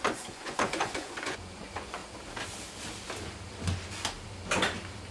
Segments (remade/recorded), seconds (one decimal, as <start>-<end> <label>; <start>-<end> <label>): 0.0-2.0 remade; 2.0-5.1 recorded